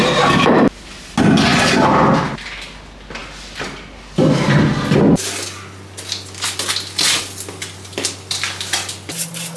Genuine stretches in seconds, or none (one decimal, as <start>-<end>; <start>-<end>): 0.0-9.6